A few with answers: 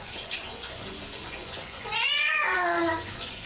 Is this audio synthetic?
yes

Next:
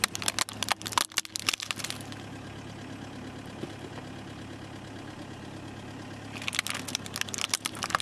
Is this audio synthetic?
no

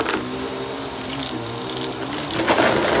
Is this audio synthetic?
no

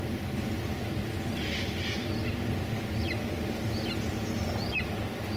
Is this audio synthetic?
no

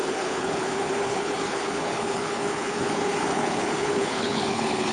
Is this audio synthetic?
yes